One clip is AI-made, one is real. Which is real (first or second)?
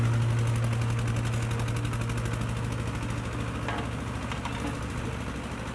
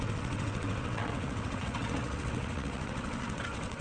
first